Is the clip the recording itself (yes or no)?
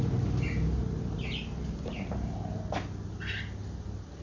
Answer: yes